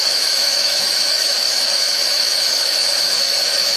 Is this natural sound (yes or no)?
no